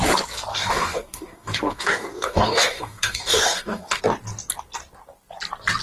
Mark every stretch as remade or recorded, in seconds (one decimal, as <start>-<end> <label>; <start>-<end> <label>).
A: 0.0-0.5 recorded; 0.5-4.0 remade; 4.0-5.8 recorded